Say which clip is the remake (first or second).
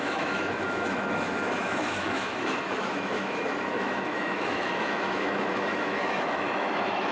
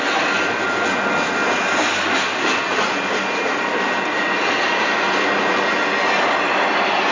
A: first